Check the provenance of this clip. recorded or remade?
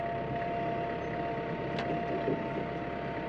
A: recorded